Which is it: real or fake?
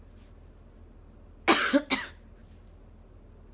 real